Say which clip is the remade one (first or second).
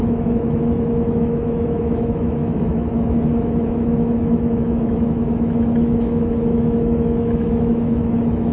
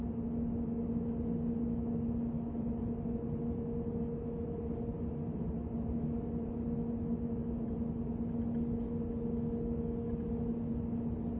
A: first